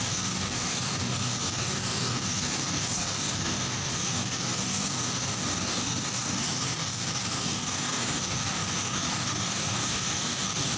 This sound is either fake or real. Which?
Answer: fake